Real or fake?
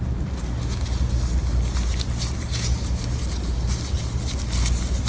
real